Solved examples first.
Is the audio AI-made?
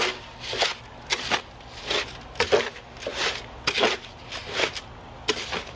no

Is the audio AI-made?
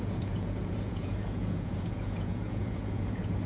yes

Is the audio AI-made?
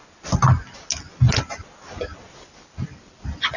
no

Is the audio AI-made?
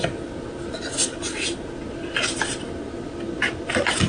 no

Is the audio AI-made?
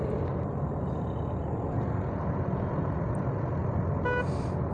no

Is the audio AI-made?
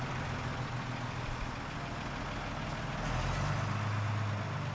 no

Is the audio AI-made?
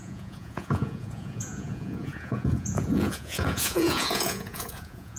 yes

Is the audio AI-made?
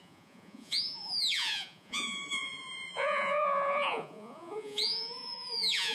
yes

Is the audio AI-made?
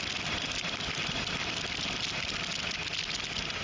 no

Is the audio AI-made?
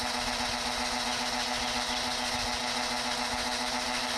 no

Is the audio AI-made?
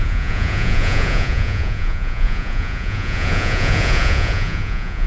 yes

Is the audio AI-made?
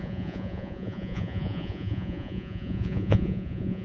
yes